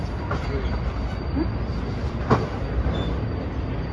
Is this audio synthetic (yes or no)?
no